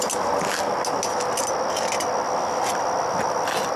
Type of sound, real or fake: real